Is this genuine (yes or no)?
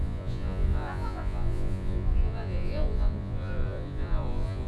no